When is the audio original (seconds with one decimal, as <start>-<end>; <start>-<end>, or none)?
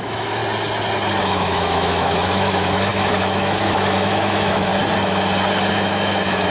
0.4-1.2; 4.7-5.7